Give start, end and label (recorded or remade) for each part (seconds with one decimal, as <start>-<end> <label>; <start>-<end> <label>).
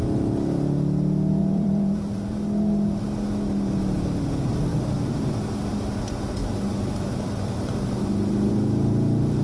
0.0-1.4 recorded; 1.4-3.0 remade; 3.0-4.7 recorded; 4.7-5.3 remade; 5.3-9.4 recorded